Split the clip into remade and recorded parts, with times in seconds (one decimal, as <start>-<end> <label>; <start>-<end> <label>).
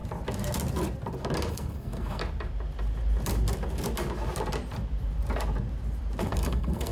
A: 0.0-1.5 recorded; 1.5-2.2 remade; 2.2-6.2 recorded; 6.2-6.9 remade